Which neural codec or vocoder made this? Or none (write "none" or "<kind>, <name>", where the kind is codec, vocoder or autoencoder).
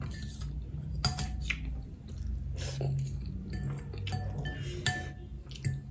none